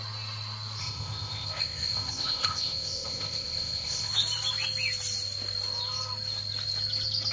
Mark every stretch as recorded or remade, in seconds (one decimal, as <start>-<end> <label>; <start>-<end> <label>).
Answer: 0.0-0.8 recorded; 0.8-4.1 remade; 4.1-7.3 recorded